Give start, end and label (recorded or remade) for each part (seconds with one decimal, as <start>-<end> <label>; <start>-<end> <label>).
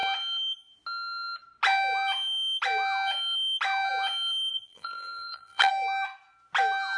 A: 0.0-4.5 recorded; 4.5-5.7 remade; 5.7-7.0 recorded